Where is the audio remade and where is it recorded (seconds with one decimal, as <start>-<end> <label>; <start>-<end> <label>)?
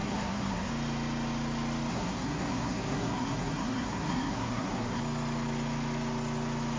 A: 0.0-0.7 remade; 0.7-1.9 recorded; 1.9-5.0 remade; 5.0-6.8 recorded